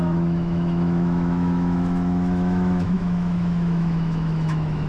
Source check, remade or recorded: remade